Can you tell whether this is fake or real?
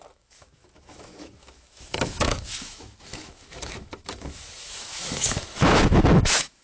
fake